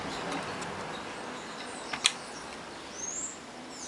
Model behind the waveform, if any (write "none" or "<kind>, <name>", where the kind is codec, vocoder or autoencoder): none